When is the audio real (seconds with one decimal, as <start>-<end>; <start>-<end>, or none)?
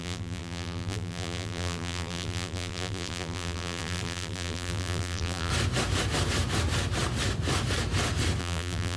5.5-8.4